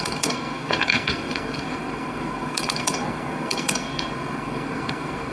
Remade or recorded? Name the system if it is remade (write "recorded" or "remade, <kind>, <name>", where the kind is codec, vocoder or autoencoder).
remade, codec, SNAC